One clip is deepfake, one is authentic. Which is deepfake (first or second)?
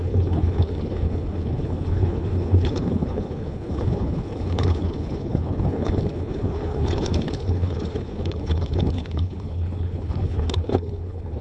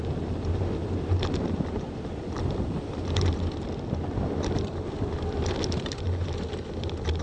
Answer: first